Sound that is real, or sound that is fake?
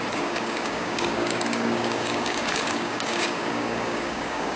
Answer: fake